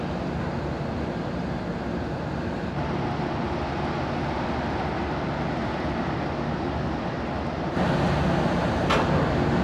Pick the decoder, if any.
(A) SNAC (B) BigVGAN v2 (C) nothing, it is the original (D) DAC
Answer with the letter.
C